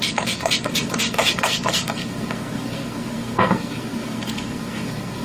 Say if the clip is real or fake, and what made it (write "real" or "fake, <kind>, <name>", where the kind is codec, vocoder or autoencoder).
fake, codec, SNAC